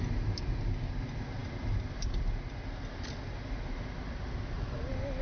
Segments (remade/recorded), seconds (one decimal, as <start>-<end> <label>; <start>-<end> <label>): 0.0-5.2 recorded